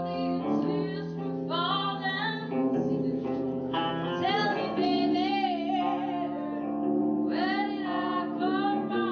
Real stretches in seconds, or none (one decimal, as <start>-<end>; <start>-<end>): 0.0-2.4; 3.9-4.5; 5.3-7.0